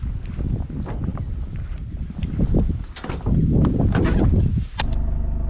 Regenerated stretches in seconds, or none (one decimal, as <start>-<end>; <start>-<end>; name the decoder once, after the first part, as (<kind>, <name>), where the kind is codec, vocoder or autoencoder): none